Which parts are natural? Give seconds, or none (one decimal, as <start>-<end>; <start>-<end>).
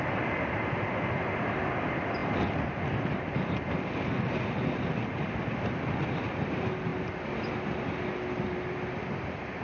0.0-9.6